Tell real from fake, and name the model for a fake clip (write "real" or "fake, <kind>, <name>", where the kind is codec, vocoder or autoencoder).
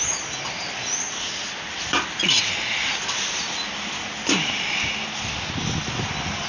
real